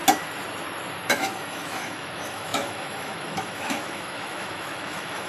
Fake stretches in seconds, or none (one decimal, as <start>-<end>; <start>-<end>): 1.1-5.3